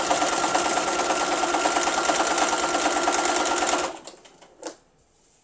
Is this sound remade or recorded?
recorded